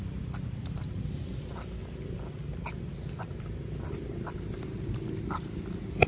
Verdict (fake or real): real